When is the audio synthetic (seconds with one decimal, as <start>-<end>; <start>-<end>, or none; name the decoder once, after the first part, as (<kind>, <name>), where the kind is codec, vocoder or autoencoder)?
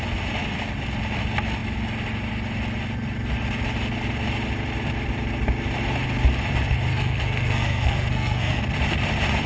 6.9-8.6 (codec, SNAC)